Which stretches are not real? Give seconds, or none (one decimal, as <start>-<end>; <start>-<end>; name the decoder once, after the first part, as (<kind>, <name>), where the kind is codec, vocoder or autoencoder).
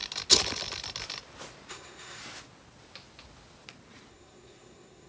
1.7-2.2 (codec, SNAC); 4.1-5.1